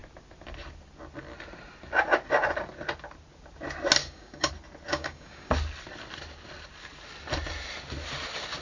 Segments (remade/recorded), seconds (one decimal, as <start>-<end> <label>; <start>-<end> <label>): 0.0-4.0 recorded; 4.0-4.5 remade; 4.5-4.9 recorded; 4.9-5.5 remade; 5.5-8.6 recorded